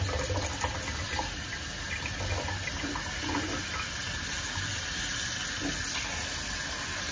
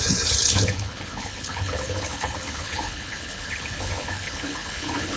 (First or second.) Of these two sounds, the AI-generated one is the second